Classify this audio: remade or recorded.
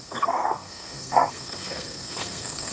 remade